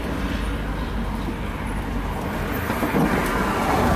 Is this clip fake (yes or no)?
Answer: no